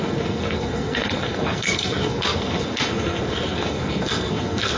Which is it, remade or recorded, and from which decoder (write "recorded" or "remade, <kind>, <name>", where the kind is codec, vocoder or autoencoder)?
remade, codec, SNAC